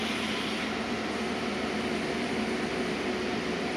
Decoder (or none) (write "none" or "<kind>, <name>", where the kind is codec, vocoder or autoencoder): none